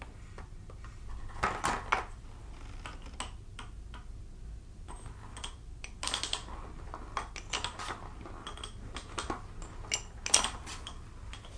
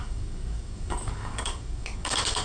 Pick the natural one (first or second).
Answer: first